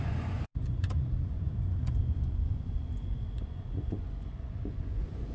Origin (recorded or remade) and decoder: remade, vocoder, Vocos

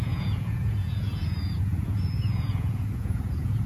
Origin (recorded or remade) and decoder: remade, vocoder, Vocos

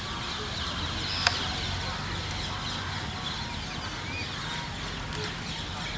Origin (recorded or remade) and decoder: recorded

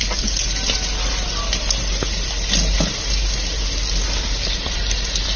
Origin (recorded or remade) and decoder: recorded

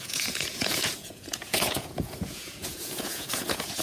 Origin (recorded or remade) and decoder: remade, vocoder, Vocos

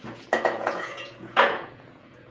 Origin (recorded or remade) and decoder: remade, vocoder, Vocos